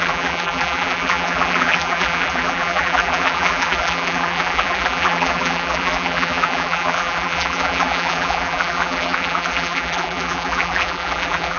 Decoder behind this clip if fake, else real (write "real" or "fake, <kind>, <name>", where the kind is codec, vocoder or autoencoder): fake, vocoder, BigVGAN v2